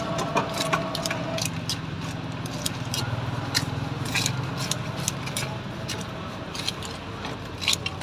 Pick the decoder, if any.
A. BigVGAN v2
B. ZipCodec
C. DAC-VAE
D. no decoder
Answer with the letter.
D